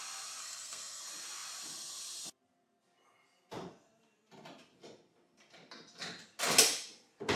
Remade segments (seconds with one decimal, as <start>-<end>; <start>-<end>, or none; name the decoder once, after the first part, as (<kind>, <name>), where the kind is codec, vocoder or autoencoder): 0.4-1.0 (codec, SNAC)